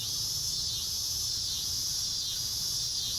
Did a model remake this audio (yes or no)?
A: no